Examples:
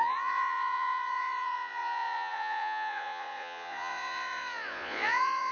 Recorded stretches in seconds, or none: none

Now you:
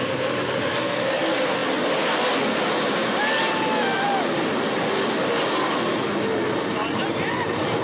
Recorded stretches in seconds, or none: 0.0-7.8

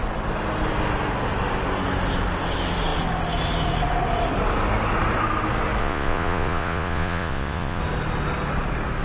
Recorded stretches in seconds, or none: 0.0-5.8; 7.8-9.0

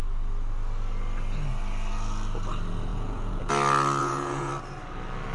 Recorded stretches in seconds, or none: 0.0-2.9; 3.4-4.0; 4.5-5.3

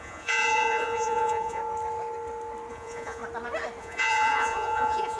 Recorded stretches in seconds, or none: 1.6-2.7; 3.2-3.8

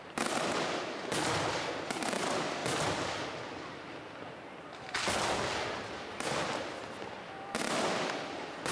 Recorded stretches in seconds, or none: 0.0-8.7